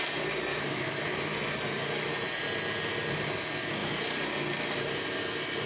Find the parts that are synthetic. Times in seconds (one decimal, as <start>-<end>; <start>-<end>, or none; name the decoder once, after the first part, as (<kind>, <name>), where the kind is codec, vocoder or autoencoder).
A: 0.5-1.3 (autoencoder, DAC-VAE)